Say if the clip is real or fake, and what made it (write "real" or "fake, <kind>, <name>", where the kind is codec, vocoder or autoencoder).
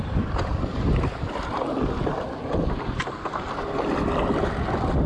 real